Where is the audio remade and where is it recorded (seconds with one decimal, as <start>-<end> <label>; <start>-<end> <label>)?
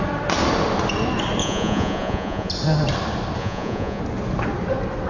0.0-1.4 recorded; 1.4-2.5 remade; 2.5-3.4 recorded; 3.4-4.0 remade; 4.0-5.1 recorded